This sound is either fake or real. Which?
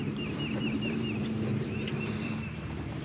fake